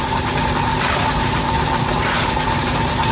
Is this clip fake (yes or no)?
yes